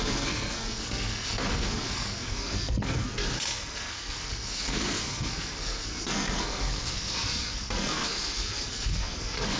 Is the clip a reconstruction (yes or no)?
yes